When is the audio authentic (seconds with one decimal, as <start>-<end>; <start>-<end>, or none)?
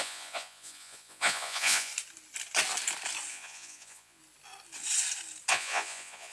1.9-3.3; 4.2-5.5